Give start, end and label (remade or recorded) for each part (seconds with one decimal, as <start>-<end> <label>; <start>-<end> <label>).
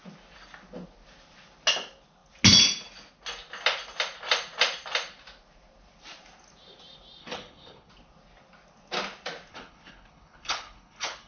0.0-7.2 recorded; 7.2-7.9 remade; 7.9-9.5 recorded; 9.5-11.3 remade